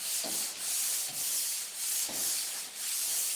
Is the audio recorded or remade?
recorded